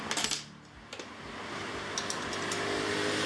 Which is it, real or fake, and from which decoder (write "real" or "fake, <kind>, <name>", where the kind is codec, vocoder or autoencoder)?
real